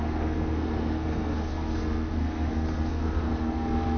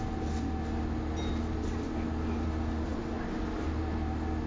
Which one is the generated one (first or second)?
first